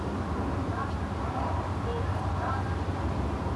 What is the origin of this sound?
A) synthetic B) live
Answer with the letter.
B